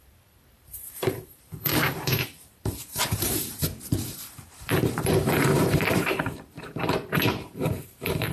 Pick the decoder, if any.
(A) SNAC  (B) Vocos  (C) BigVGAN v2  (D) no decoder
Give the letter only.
C